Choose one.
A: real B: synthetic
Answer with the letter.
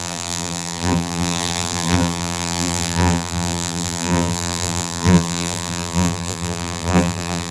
B